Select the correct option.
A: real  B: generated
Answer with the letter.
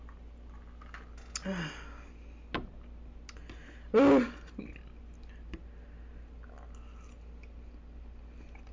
A